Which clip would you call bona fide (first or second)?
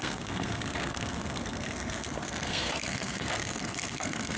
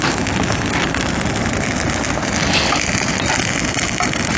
second